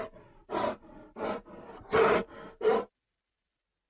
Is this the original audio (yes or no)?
yes